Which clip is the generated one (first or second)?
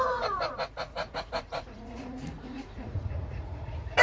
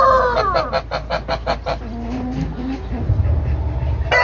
first